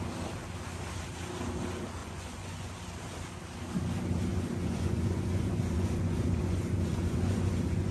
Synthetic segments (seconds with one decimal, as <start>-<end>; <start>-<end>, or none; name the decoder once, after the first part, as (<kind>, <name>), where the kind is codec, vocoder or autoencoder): 2.0-2.7 (vocoder, Vocos); 4.3-7.9